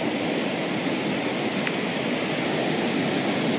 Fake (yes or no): no